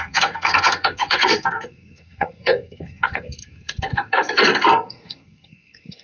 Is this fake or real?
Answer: fake